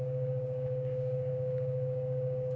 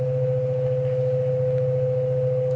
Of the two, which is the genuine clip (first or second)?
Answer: second